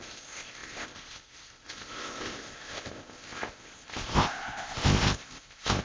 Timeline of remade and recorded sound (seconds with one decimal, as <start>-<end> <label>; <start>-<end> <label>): 0.0-5.8 remade